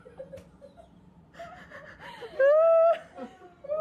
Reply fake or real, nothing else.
real